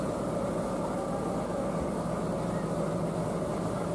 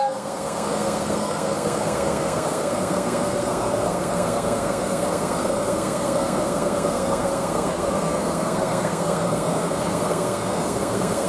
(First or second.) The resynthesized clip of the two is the second